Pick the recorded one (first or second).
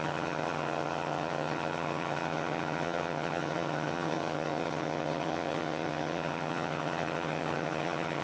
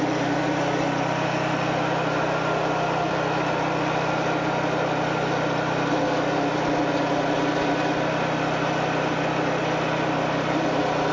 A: second